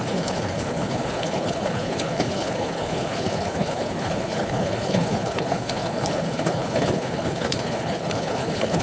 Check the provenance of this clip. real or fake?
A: fake